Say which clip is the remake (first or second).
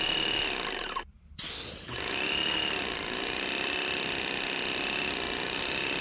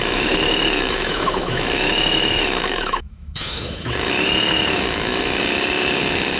second